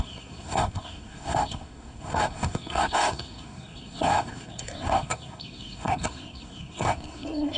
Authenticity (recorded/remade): remade